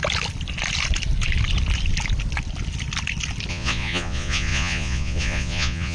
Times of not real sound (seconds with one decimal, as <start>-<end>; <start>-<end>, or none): 3.5-5.9